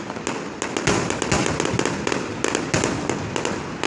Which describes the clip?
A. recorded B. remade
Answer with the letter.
A